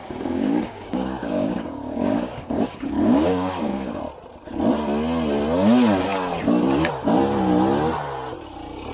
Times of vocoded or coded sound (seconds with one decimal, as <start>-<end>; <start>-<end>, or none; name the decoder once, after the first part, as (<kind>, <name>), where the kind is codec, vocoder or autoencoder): 0.0-4.0 (codec, DAC)